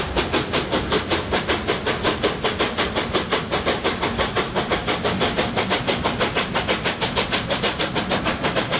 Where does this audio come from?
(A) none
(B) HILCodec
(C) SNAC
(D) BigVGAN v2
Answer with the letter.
A